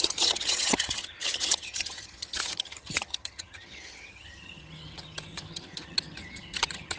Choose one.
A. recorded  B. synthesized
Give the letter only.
B